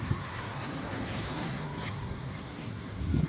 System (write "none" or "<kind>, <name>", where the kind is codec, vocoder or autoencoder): codec, SNAC